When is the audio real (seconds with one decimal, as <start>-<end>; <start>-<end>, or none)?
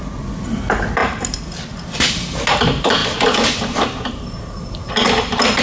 0.0-1.0; 2.1-3.0; 4.1-5.6